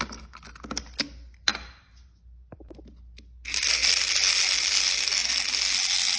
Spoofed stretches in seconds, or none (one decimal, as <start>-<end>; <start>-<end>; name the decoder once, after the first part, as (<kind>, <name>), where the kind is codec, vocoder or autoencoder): none